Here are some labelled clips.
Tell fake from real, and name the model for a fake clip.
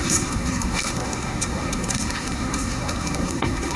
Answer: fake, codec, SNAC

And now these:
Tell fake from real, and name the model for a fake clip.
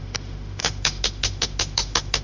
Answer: fake, autoencoder, DAC-VAE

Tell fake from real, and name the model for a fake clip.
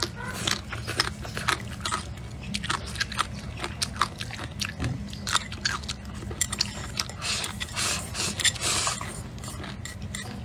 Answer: real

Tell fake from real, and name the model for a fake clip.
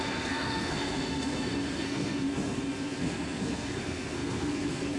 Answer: fake, codec, SNAC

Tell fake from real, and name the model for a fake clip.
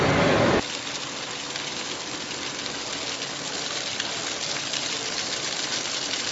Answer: real